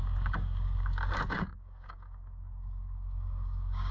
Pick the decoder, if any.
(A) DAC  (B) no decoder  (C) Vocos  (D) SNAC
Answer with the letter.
A